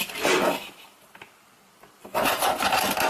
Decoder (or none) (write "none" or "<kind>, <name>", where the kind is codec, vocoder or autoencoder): none